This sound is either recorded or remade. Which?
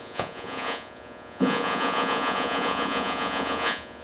remade